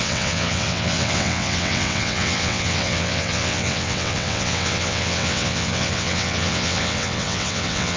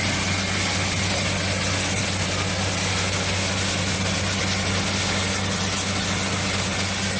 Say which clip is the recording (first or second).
second